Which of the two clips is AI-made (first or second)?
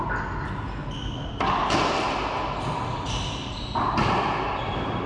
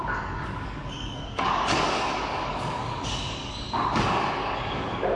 second